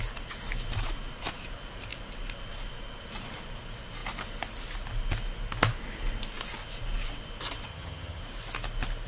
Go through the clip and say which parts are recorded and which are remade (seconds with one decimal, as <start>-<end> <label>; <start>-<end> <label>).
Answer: 0.0-7.7 recorded; 7.7-8.2 remade; 8.2-9.1 recorded